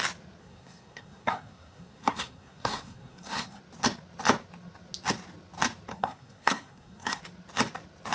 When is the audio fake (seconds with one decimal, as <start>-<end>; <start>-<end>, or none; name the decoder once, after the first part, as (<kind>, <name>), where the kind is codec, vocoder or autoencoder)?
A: 0.4-3.6 (codec, SNAC); 5.9-7.2